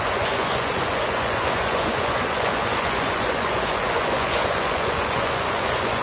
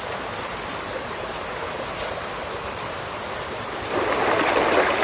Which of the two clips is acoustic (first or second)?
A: second